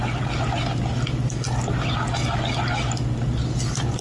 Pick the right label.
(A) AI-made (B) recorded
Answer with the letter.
B